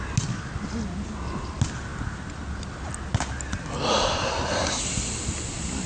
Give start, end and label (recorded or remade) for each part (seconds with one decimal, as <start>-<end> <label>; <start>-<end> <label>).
0.0-5.9 recorded